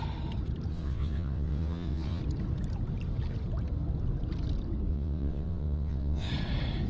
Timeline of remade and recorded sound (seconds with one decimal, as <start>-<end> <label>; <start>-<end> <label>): 0.0-0.7 recorded; 0.7-2.2 remade; 2.2-4.9 recorded; 4.9-6.3 remade; 6.3-6.9 recorded